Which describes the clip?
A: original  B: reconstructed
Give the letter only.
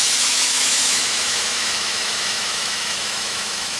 B